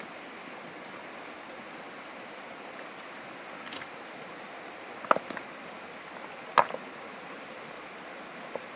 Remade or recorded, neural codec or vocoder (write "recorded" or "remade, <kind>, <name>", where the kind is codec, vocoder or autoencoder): recorded